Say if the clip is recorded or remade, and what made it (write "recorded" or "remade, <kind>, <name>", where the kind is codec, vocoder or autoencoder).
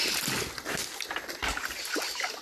recorded